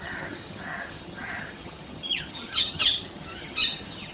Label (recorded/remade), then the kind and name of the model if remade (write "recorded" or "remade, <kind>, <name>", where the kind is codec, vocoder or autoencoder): remade, vocoder, HiFi-GAN